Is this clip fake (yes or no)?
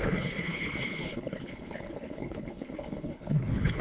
yes